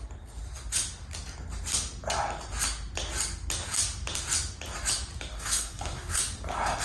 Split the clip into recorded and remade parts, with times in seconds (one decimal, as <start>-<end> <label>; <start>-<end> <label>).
0.0-5.3 recorded; 5.3-6.2 remade; 6.2-6.8 recorded